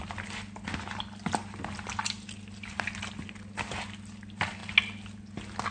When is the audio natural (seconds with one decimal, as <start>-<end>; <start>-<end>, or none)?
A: 0.0-5.7

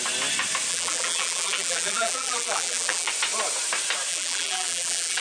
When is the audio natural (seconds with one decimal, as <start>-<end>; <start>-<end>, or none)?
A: 0.0-0.7; 3.1-4.1

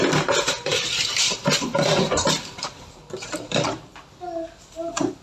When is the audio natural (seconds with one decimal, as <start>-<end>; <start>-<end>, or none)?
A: 0.0-0.7; 3.8-5.2

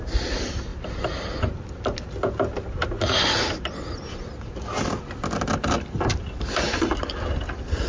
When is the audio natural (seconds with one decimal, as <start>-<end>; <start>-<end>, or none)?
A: 0.0-7.9

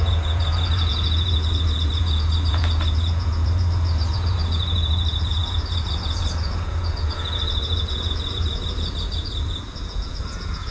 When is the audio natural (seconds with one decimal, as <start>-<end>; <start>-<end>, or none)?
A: none

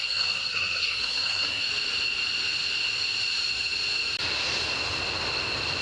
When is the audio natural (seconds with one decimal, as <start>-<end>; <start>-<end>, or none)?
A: 1.6-5.8

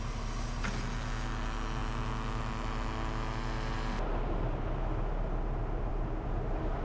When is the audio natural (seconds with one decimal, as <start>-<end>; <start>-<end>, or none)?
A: 0.0-6.8

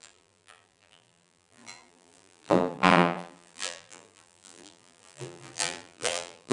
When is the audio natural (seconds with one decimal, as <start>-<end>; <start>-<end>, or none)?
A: none